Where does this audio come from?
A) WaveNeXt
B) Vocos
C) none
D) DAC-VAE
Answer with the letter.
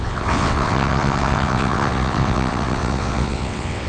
A